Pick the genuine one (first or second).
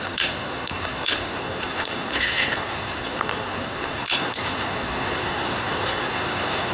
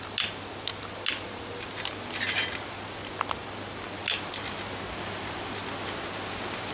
second